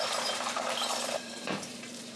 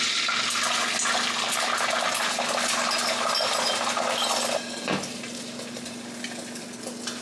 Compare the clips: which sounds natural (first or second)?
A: second